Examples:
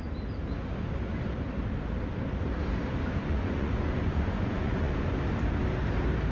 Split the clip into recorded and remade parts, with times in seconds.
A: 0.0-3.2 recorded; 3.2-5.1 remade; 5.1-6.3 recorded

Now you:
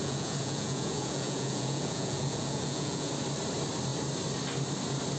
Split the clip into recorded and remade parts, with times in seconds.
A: 0.0-3.1 remade; 3.1-5.2 recorded